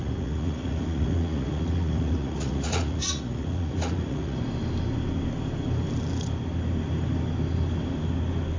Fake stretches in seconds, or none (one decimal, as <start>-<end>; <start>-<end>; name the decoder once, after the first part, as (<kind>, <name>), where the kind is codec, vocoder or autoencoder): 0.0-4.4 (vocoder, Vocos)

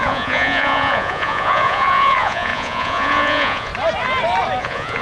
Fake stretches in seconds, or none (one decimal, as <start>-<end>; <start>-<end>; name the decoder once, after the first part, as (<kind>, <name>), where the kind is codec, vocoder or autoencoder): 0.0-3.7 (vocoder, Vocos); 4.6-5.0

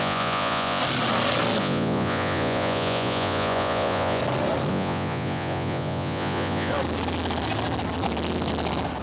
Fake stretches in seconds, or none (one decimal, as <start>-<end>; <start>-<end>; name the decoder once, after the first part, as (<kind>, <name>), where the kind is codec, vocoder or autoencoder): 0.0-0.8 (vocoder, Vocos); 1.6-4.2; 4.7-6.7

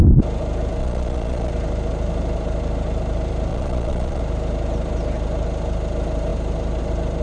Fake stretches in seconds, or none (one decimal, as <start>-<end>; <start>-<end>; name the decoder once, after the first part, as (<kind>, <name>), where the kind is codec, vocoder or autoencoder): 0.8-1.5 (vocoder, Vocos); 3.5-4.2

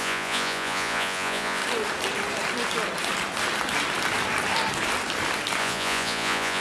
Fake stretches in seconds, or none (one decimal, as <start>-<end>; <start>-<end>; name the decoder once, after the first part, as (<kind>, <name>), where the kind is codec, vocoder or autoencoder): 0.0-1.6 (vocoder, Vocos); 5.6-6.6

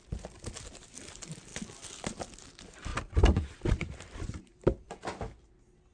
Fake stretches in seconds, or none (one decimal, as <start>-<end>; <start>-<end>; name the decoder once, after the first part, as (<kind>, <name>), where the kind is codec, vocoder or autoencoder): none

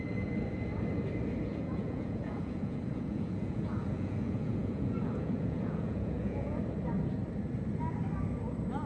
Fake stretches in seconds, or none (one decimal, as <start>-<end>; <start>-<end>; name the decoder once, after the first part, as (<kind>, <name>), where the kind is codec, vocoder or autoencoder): 1.4-6.6 (vocoder, Vocos)